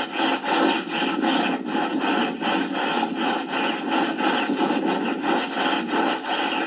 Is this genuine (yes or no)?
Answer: yes